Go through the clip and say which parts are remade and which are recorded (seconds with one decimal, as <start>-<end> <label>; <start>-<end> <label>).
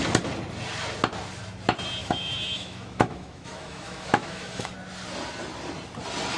0.0-2.0 recorded; 2.0-4.7 remade; 4.7-6.4 recorded